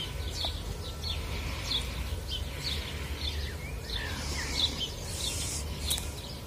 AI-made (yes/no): no